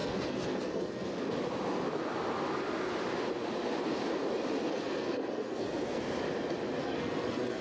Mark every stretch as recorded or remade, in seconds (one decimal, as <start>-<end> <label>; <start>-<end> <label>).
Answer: 0.0-1.3 remade; 1.3-4.7 recorded; 4.7-6.0 remade; 6.0-6.8 recorded; 6.8-7.6 remade